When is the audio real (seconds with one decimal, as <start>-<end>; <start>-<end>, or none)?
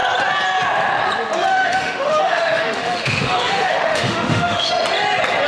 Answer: 0.0-1.5; 4.7-5.5